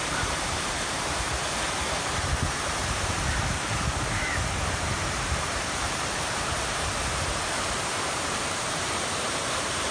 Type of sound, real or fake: fake